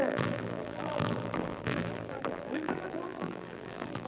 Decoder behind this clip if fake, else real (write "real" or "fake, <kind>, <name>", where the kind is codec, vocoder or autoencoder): fake, vocoder, BigVGAN v2